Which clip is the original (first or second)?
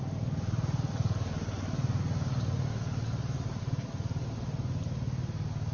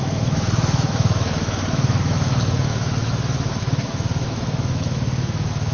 first